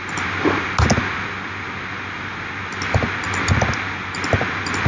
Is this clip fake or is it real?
real